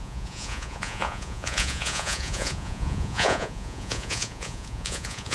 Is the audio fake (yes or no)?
yes